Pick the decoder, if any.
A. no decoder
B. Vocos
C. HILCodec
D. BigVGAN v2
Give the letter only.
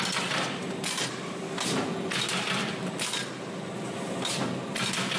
A